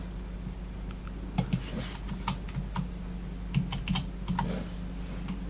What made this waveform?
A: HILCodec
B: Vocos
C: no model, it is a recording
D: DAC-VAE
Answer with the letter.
C